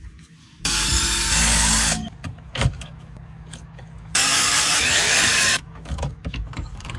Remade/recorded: remade